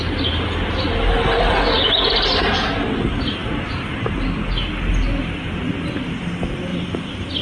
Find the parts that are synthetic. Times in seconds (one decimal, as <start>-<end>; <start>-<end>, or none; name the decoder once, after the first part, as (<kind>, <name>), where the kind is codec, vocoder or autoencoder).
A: 6.7-7.4 (vocoder, BigVGAN v2)